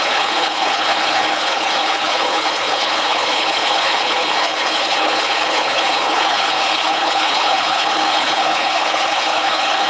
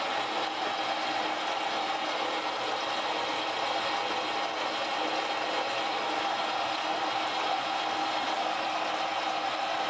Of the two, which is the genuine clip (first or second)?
second